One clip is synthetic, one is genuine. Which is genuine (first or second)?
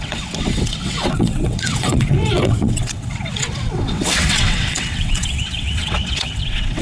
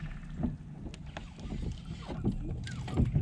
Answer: second